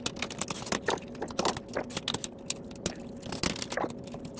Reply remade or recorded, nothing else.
recorded